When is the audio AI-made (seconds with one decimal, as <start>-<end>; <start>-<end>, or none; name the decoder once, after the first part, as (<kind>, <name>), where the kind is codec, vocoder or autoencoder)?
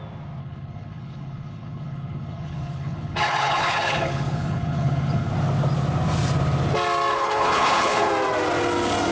0.4-5.3 (codec, HILCodec); 7.1-8.1